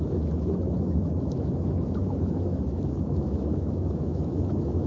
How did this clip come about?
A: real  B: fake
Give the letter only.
B